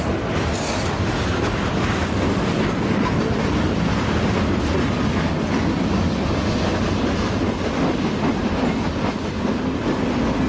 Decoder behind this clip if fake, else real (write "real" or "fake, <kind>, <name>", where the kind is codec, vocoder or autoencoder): real